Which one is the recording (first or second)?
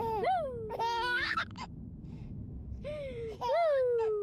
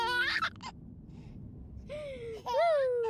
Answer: second